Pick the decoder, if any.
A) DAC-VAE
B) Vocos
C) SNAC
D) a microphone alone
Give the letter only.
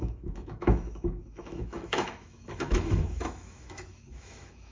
A